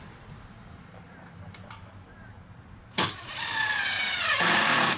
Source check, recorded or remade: remade